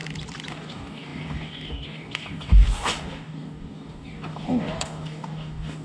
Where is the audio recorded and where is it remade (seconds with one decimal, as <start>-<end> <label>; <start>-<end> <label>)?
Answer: 0.0-0.5 recorded; 0.5-5.8 remade